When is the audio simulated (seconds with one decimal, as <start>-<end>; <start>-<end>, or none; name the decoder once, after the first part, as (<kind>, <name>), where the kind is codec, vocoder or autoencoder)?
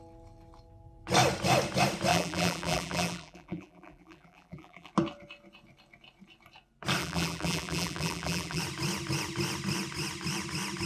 2.1-4.9 (vocoder, BigVGAN v2); 7.0-8.6